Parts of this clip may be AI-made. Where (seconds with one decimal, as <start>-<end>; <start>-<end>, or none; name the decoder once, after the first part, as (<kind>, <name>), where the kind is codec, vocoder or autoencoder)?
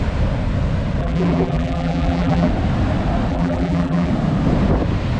1.0-2.5 (vocoder, BigVGAN v2); 3.3-4.1